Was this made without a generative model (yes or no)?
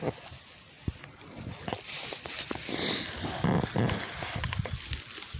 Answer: yes